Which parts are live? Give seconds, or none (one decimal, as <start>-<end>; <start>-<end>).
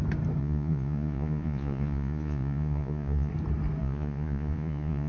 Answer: 0.0-0.4; 3.3-3.8